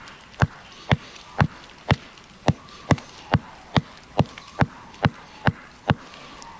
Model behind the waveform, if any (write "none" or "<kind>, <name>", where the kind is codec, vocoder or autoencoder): none